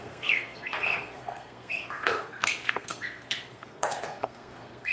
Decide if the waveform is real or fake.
fake